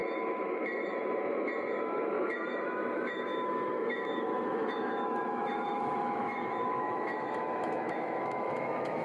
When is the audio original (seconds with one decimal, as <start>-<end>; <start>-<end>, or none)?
none

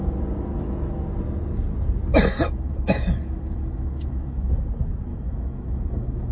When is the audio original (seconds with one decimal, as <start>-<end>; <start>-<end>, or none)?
0.0-2.1; 4.5-5.1

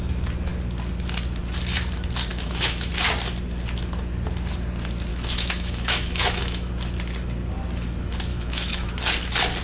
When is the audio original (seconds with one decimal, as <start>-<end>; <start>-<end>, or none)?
0.0-2.3; 2.9-5.1; 6.7-8.3; 8.9-9.6

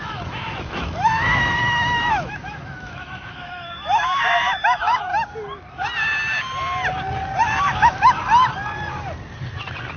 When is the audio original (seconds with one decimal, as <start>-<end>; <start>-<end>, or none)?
5.1-7.4; 8.2-10.0

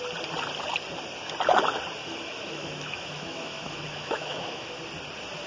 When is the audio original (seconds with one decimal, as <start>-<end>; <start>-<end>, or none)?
0.0-2.0; 4.8-5.5